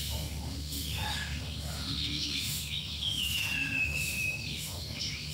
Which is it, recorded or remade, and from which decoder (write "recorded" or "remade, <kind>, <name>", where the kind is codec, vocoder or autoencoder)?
remade, autoencoder, DAC-VAE